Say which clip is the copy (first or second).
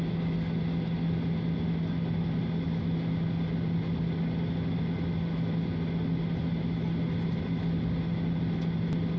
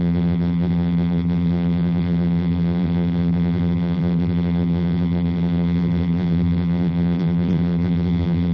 second